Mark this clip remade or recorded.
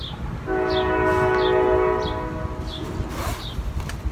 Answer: recorded